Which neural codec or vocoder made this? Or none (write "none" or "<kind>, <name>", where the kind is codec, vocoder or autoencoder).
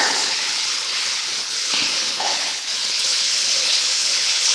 codec, HILCodec